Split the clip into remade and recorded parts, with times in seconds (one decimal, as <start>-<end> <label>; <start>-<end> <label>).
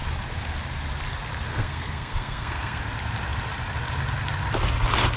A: 0.0-1.5 recorded; 1.5-2.8 remade; 2.8-5.2 recorded